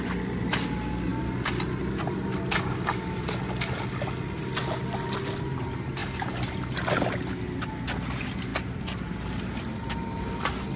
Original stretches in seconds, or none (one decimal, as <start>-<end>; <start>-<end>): 0.0-10.8